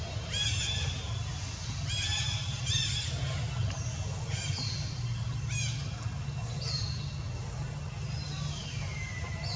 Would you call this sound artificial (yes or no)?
no